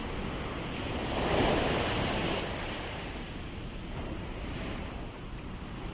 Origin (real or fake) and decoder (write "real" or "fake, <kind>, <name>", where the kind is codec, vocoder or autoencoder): real